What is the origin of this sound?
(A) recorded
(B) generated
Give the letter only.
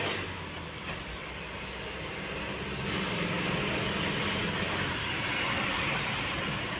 A